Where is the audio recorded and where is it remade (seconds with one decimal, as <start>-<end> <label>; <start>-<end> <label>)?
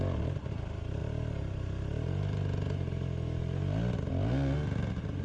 0.0-5.2 recorded